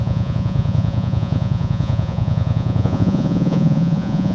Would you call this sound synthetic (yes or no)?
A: yes